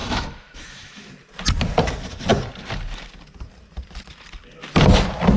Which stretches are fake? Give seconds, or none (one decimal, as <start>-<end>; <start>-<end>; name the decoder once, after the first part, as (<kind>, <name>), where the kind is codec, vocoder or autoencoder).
0.0-1.1 (autoencoder, DAC-VAE)